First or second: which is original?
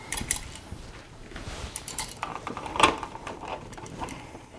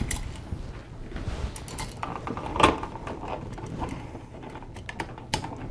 second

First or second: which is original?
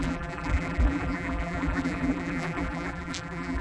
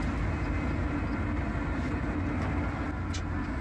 second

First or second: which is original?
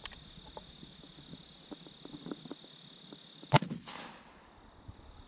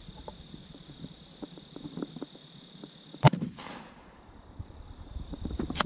first